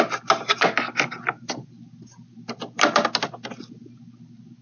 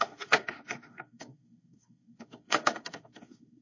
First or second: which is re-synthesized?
second